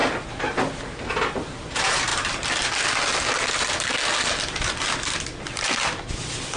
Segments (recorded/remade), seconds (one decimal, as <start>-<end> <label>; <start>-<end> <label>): 0.0-6.6 recorded